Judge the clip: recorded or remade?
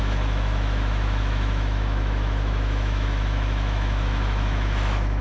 remade